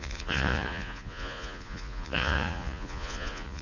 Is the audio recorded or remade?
remade